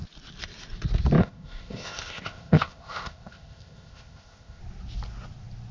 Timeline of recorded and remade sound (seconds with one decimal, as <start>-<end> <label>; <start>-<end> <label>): 0.0-1.2 recorded; 1.2-4.6 remade; 4.6-5.7 recorded